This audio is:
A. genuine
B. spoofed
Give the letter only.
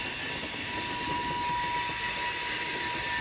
A